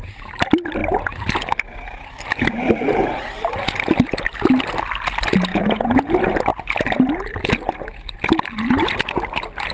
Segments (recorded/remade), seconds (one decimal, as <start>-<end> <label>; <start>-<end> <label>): 0.0-5.5 recorded; 5.5-6.1 remade; 6.1-9.7 recorded